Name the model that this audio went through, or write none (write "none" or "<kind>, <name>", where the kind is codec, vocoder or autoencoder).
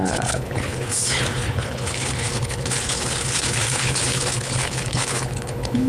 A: codec, HILCodec